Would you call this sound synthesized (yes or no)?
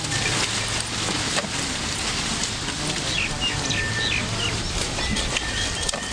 no